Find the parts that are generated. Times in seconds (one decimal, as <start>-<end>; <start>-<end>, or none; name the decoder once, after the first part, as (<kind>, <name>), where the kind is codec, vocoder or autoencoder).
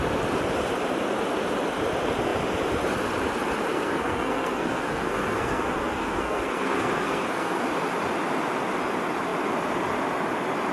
3.7-7.6 (codec, SNAC)